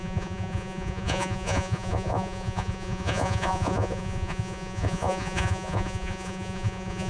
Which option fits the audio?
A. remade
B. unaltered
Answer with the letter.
A